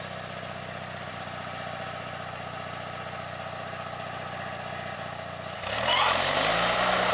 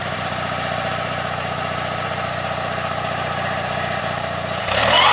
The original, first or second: first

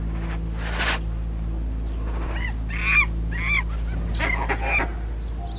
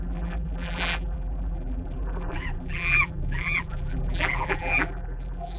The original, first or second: first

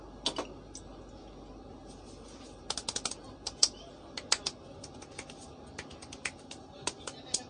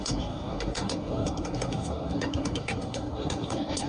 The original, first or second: first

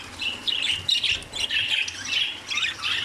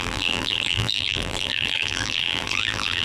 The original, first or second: first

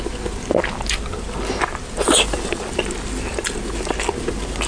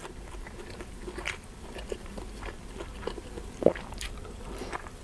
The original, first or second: first